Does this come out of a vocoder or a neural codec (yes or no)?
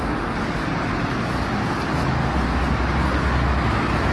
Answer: no